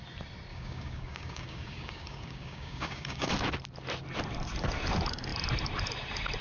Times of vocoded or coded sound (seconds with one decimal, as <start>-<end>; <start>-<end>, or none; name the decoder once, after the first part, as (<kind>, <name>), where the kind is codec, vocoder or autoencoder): 0.5-3.3 (codec, DAC)